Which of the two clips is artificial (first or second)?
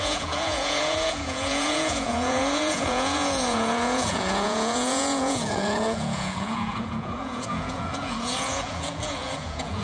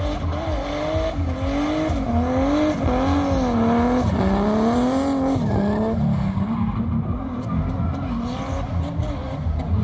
first